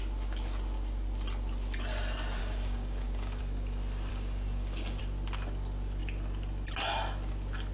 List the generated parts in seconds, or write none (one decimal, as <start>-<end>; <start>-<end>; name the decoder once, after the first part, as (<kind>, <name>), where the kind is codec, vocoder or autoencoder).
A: 2.4-3.4 (codec, DAC); 4.1-5.0